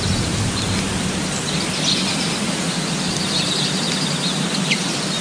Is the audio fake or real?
real